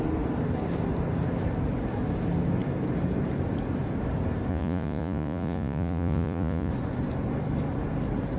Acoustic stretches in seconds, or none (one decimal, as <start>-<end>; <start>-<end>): 0.0-4.5; 6.7-8.4